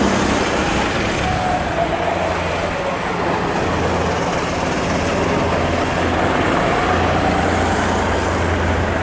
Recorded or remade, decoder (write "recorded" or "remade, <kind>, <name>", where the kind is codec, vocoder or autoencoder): recorded